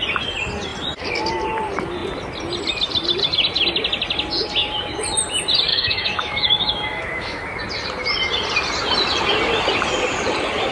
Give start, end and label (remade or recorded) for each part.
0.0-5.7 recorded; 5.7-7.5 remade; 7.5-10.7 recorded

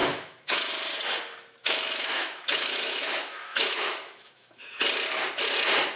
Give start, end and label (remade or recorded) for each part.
0.0-0.7 remade; 0.7-1.6 recorded; 1.6-4.8 remade; 4.8-6.0 recorded

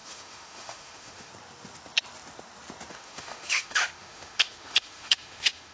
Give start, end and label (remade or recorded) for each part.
0.0-1.3 remade; 1.3-2.9 recorded; 2.9-5.7 remade

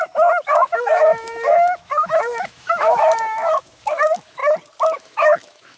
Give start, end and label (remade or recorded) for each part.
0.0-4.4 remade; 4.4-5.0 recorded; 5.0-5.8 remade